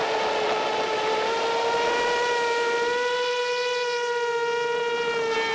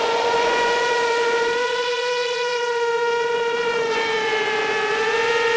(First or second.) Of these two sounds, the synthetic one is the second